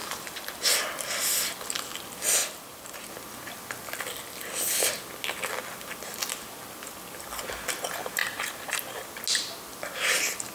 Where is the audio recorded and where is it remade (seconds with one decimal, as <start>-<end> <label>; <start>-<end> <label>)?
0.0-0.6 remade; 0.6-2.4 recorded; 2.4-3.1 remade; 3.1-8.2 recorded; 8.2-8.8 remade; 8.8-10.5 recorded